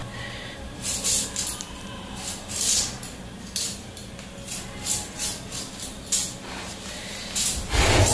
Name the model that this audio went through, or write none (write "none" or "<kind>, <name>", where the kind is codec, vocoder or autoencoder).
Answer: none